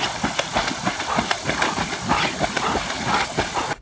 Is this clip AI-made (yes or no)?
no